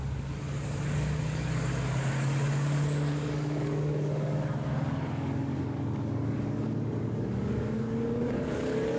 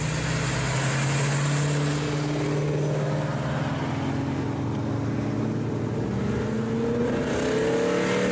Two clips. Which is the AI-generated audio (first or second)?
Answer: first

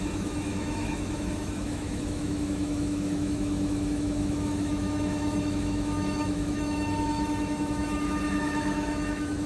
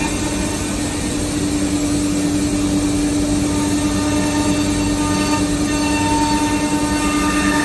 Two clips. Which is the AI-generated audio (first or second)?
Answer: first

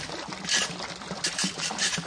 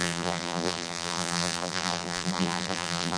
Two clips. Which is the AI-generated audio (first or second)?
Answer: second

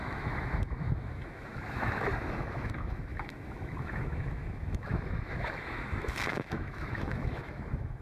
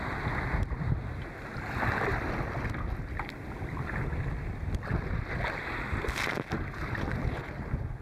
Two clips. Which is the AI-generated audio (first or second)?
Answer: first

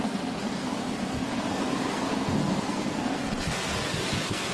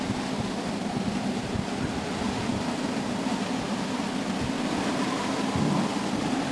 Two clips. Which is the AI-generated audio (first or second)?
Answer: first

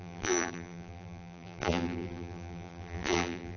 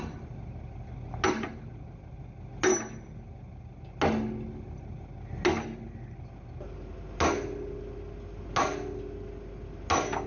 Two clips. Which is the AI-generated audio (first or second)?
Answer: first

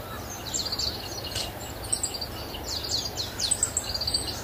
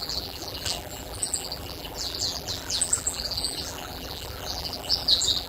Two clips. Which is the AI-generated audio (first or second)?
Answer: second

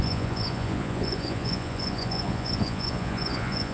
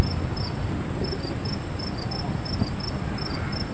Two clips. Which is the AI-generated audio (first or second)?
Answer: first